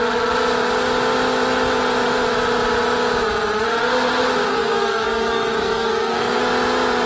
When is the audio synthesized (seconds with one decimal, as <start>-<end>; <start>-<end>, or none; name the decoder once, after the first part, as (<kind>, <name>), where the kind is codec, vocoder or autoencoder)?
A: 4.5-6.4 (codec, SNAC)